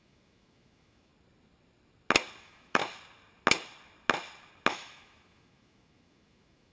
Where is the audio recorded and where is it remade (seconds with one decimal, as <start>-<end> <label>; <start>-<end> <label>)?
0.0-1.1 remade; 1.1-2.4 recorded; 2.4-2.8 remade; 2.8-4.7 recorded; 4.7-6.7 remade

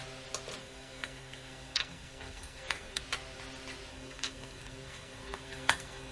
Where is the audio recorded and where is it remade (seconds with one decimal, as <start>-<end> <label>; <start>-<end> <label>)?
0.0-0.6 recorded; 0.6-3.0 remade; 3.0-3.9 recorded; 3.9-6.1 remade

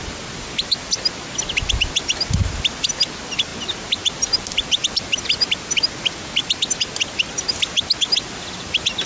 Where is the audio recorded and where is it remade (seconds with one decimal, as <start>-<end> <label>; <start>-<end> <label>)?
0.0-9.1 recorded

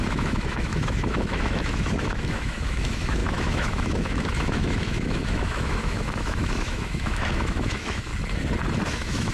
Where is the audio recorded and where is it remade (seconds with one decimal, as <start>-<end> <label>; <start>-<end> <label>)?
0.0-8.1 remade; 8.1-8.9 recorded; 8.9-9.3 remade

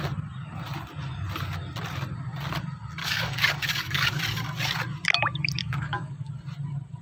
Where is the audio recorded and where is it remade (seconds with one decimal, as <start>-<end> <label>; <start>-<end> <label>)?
0.0-3.0 recorded; 3.0-4.2 remade; 4.2-5.6 recorded; 5.6-6.3 remade; 6.3-7.0 recorded